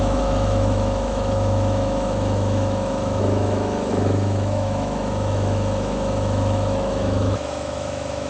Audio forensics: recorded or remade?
remade